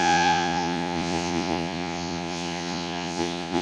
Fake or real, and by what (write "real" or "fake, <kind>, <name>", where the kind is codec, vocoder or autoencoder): fake, vocoder, Vocos